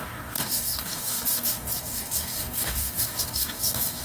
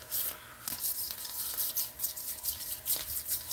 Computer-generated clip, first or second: first